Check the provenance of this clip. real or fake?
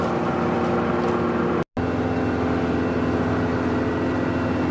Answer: real